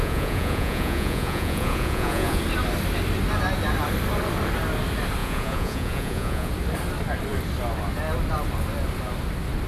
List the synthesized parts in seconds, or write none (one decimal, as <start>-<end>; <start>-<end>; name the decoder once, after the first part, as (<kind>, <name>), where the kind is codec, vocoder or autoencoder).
0.0-2.4 (vocoder, Vocos); 5.2-6.5